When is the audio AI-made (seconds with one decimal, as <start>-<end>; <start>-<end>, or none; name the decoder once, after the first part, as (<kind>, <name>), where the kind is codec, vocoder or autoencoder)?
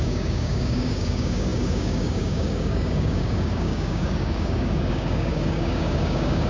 0.0-6.5 (codec, DAC)